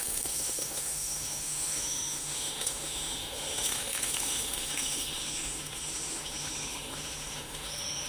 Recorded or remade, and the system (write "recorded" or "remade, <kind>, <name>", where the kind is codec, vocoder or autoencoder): remade, autoencoder, DAC-VAE